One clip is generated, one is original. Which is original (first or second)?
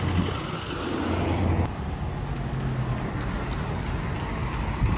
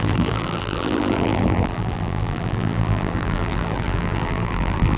first